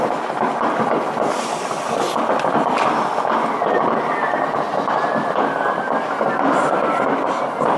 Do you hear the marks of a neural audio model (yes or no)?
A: no